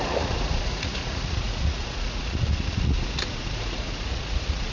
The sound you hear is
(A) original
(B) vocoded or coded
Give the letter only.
B